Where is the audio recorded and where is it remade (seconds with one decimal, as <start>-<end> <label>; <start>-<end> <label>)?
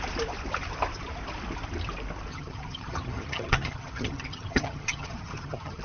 0.0-2.3 recorded; 2.3-5.8 remade